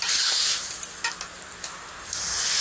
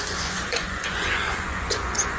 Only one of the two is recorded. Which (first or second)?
first